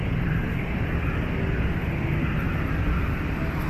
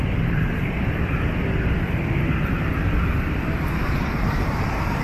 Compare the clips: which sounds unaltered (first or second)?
first